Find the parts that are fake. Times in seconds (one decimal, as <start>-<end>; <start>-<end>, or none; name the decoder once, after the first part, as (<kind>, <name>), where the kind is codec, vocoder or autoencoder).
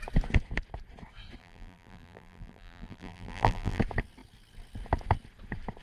1.4-3.8 (vocoder, BigVGAN v2)